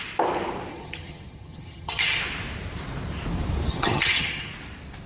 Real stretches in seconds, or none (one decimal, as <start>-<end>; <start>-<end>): 0.0-0.7; 2.2-3.7; 4.5-5.1